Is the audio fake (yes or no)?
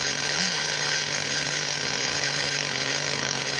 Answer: yes